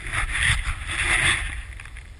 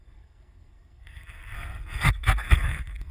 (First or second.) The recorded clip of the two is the first